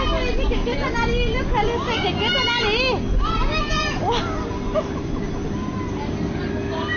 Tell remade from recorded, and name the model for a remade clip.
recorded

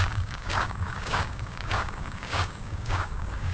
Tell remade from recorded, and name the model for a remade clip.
remade, codec, DAC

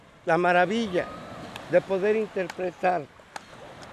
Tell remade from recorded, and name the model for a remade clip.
recorded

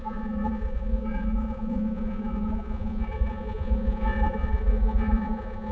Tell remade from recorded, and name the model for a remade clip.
remade, vocoder, Vocos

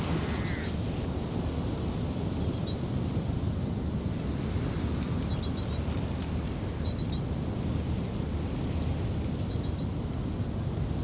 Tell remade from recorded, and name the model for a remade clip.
recorded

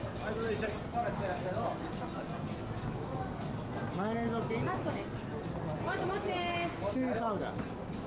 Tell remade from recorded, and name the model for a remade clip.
recorded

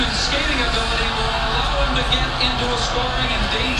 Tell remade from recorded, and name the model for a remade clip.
recorded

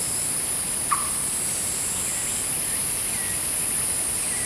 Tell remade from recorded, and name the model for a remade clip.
recorded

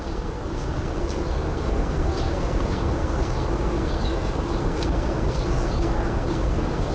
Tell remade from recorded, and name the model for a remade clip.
remade, codec, SNAC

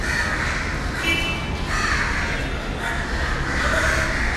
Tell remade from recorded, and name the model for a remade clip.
recorded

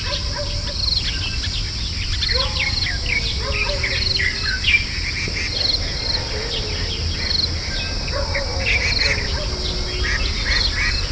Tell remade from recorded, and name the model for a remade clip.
recorded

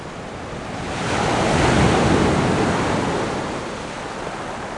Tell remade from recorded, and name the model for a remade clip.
recorded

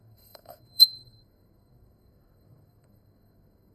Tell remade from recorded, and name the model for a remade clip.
remade, codec, SNAC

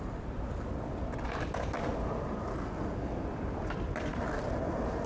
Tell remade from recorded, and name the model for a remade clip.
recorded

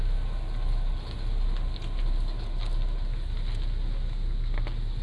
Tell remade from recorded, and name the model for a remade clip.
recorded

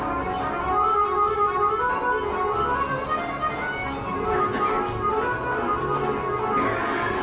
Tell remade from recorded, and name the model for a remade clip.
recorded